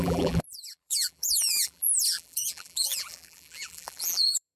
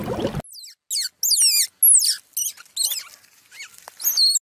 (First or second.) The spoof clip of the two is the first